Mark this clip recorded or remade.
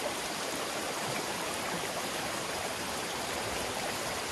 remade